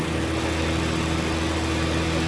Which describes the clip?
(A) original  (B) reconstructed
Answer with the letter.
A